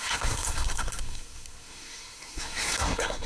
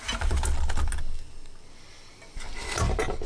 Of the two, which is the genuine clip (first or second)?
second